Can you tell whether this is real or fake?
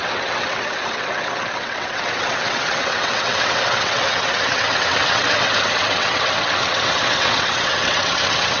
fake